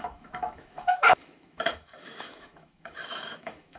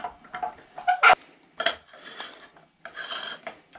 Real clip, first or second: second